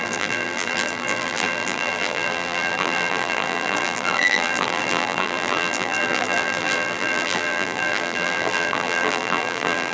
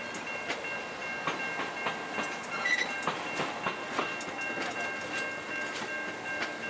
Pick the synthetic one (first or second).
first